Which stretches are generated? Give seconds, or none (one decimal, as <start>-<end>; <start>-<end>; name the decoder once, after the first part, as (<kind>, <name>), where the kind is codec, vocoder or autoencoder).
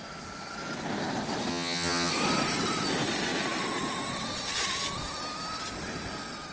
1.5-2.1 (vocoder, HiFi-GAN)